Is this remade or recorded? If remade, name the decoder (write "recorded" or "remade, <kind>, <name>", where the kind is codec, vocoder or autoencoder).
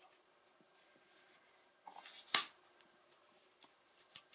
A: recorded